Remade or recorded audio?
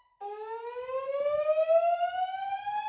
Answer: recorded